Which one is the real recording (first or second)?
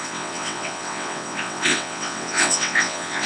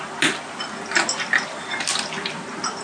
second